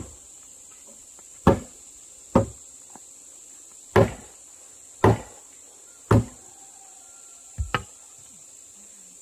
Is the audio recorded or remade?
recorded